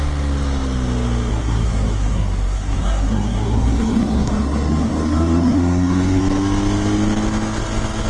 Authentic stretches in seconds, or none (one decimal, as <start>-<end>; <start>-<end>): 0.0-1.3; 6.2-8.1